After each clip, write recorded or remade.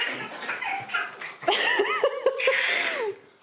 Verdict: recorded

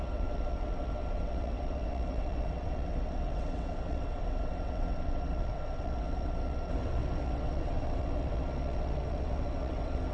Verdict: remade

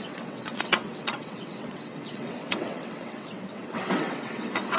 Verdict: remade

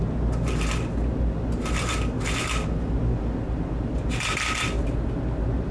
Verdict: recorded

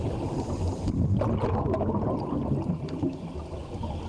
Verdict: recorded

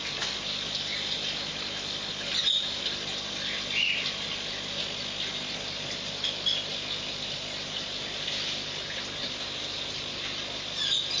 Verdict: recorded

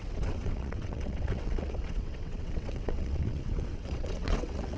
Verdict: remade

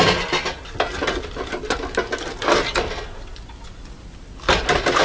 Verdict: recorded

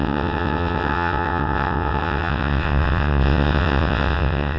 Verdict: remade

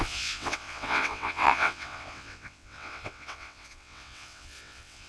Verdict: remade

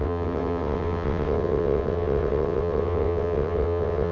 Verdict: remade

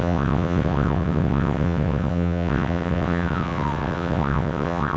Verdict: remade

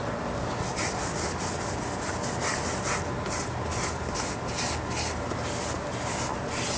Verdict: recorded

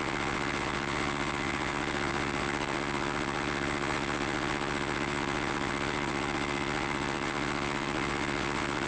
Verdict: remade